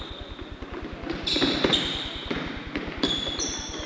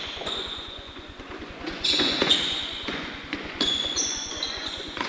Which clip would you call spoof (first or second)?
second